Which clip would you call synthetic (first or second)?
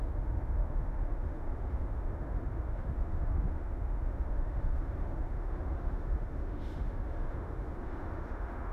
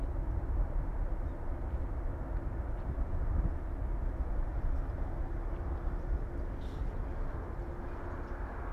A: first